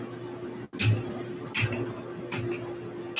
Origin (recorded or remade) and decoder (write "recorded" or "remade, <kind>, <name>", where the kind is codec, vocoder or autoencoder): recorded